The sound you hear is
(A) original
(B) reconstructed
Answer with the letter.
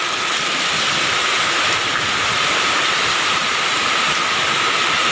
A